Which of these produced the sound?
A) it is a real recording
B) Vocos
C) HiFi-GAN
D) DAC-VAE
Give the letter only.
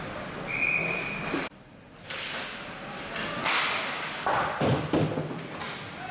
A